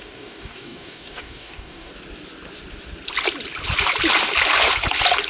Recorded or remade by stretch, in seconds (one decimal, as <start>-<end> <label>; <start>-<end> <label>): 0.0-1.9 remade; 1.9-5.3 recorded